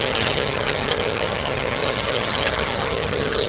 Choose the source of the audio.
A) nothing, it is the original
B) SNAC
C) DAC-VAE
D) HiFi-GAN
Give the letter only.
D